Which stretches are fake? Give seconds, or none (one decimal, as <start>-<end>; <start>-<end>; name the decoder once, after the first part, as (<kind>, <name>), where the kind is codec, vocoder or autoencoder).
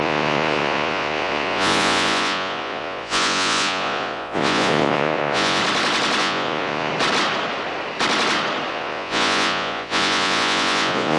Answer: 0.0-5.6 (vocoder, Vocos); 6.2-6.9; 8.7-11.2